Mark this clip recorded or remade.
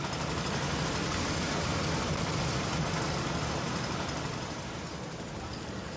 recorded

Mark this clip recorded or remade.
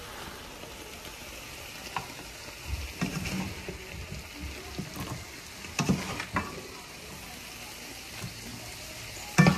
recorded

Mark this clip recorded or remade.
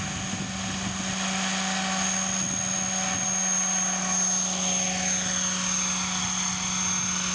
recorded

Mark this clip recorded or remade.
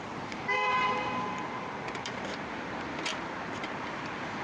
remade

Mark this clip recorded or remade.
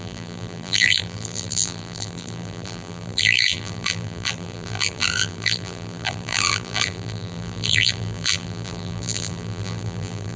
remade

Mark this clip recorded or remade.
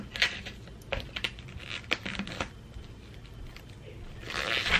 recorded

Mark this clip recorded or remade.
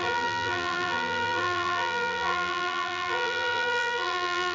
remade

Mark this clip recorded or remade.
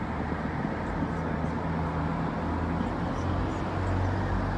recorded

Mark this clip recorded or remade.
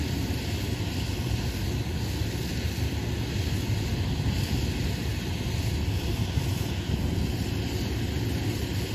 recorded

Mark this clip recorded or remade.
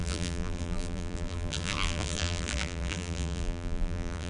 remade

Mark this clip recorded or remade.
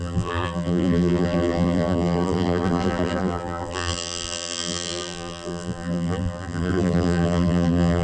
remade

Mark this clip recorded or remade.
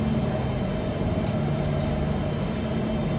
recorded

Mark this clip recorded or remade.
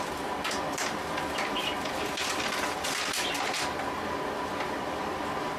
remade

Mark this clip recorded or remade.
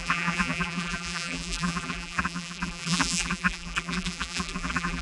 remade